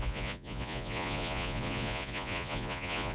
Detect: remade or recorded remade